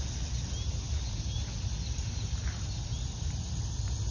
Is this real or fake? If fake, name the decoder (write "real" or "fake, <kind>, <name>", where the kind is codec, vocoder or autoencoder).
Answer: real